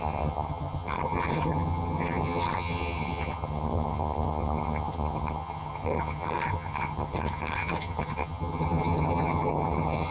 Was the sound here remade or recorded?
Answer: remade